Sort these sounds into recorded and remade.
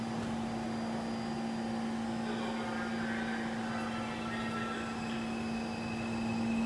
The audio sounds recorded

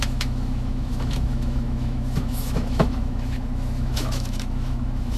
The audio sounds remade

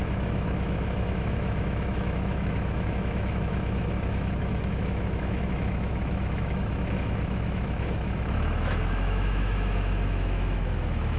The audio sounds remade